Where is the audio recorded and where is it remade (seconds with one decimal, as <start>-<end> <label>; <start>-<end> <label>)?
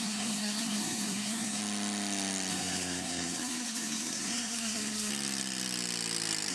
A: 0.0-1.6 remade; 1.6-2.5 recorded; 2.5-5.1 remade; 5.1-6.5 recorded